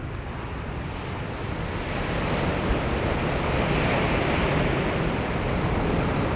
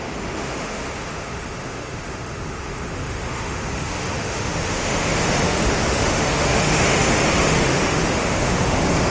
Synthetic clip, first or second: second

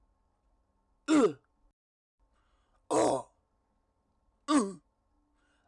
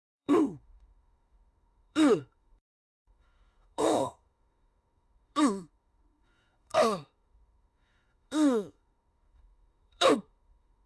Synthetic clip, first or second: second